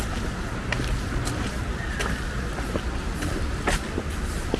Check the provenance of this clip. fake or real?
real